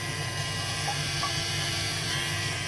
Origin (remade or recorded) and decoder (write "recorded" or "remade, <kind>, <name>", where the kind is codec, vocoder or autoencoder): remade, vocoder, BigVGAN v2